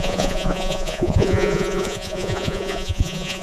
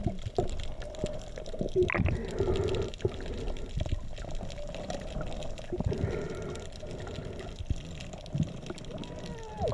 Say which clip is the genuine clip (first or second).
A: second